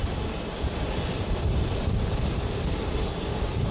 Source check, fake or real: fake